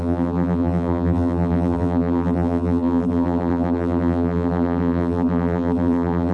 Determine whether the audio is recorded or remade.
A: remade